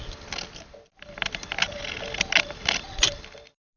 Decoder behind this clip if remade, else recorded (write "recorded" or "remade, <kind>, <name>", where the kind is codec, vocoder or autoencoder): recorded